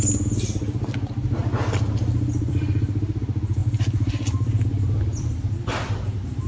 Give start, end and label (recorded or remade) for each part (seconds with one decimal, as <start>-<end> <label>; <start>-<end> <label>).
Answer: 0.0-1.4 recorded; 1.4-3.2 remade; 3.2-3.6 recorded; 3.6-6.0 remade; 6.0-6.5 recorded